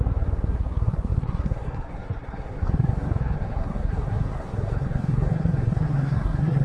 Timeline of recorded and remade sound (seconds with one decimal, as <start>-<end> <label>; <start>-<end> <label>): 0.0-6.6 remade